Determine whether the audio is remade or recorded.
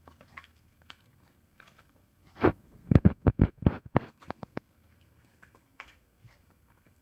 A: remade